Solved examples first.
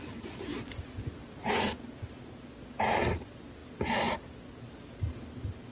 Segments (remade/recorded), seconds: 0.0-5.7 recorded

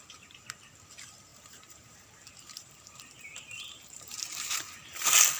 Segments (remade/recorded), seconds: 0.0-1.3 recorded; 1.3-4.5 remade; 4.5-5.4 recorded

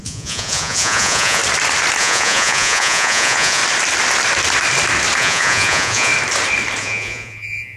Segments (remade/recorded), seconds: 0.0-1.4 remade; 1.4-2.0 recorded; 2.0-3.6 remade; 3.6-5.2 recorded; 5.2-6.1 remade; 6.1-6.8 recorded; 6.8-7.8 remade

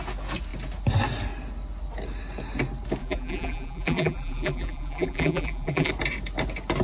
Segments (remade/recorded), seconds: 0.0-3.0 recorded; 3.0-5.9 remade; 5.9-6.8 recorded

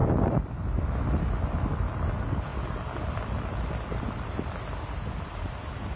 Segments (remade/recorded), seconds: 0.0-6.0 recorded